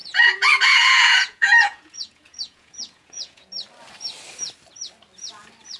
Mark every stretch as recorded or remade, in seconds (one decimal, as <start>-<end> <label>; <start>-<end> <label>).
0.0-3.5 remade; 3.5-5.8 recorded